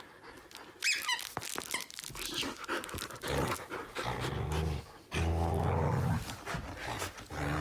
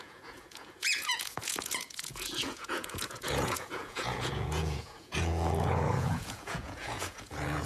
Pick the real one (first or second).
first